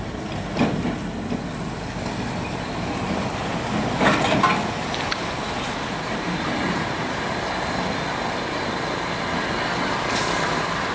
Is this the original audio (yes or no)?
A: yes